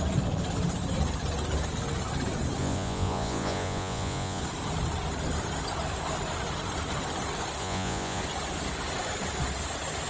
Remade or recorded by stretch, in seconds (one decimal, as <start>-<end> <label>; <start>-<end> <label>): 0.0-2.6 recorded; 2.6-4.4 remade; 4.4-7.6 recorded; 7.6-8.2 remade; 8.2-10.1 recorded